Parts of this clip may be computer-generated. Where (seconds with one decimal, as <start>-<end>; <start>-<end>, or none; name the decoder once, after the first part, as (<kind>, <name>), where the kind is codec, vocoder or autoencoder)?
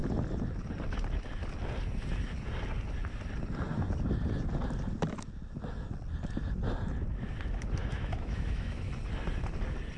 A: 7.8-8.9 (autoencoder, DAC-VAE)